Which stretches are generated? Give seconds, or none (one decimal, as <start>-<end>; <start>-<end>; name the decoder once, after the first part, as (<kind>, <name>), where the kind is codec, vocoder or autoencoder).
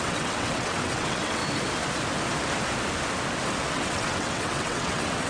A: 0.0-1.4 (vocoder, WaveNeXt); 3.7-5.3